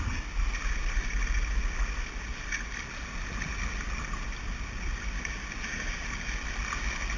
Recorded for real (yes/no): yes